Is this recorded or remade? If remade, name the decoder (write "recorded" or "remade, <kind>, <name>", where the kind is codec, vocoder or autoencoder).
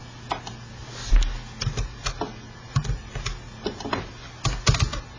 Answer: recorded